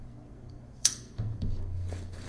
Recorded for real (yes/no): no